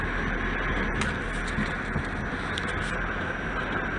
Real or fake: real